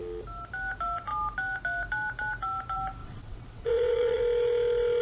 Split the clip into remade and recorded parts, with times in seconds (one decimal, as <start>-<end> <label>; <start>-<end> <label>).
0.0-3.0 recorded; 3.0-4.2 remade; 4.2-5.0 recorded